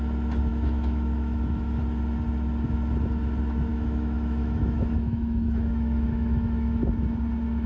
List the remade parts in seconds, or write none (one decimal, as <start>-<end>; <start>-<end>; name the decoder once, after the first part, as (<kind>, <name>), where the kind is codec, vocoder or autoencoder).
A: 0.5-1.8 (autoencoder, DAC-VAE); 3.7-6.8